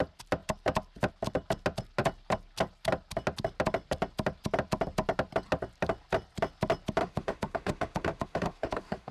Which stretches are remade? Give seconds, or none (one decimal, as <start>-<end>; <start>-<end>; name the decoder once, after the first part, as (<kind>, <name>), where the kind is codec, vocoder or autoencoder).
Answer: 7.0-9.1 (autoencoder, DAC-VAE)